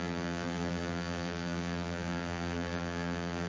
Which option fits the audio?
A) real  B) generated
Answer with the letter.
B